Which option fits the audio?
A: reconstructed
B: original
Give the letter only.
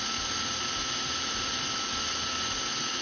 B